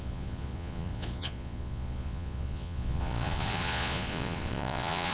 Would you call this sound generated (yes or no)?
yes